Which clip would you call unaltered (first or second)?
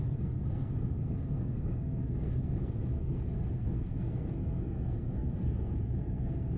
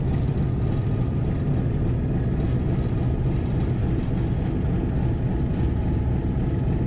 second